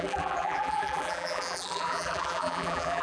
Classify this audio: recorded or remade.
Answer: remade